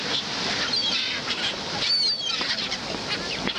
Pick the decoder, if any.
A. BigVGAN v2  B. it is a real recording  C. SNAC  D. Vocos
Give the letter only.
B